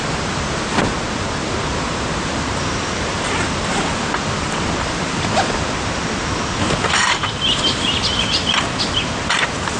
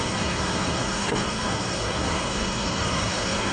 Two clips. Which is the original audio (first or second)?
first